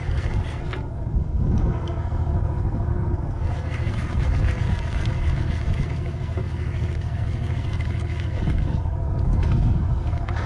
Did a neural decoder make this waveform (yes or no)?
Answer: yes